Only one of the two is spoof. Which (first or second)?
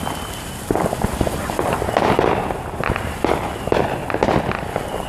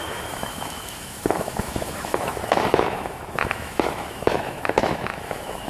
second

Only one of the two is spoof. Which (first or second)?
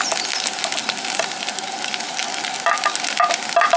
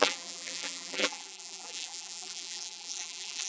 second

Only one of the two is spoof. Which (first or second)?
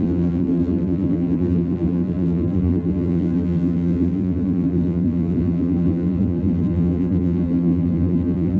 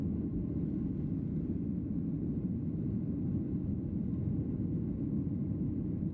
first